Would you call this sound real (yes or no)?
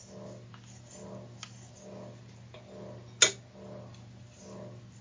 yes